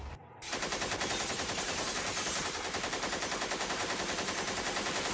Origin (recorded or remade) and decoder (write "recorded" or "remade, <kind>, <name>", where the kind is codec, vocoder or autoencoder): remade, vocoder, BigVGAN v2